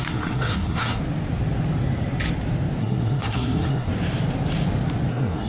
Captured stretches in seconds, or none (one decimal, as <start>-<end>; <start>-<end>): 1.0-2.8; 3.9-5.1